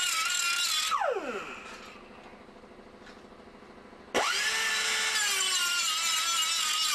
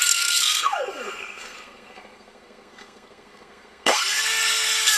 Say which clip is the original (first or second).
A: first